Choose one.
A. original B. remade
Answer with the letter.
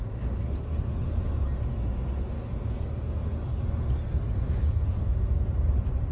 A